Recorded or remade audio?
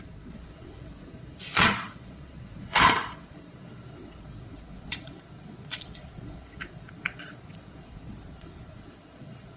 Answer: remade